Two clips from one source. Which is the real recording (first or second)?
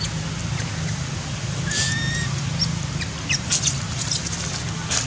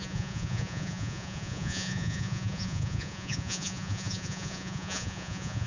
first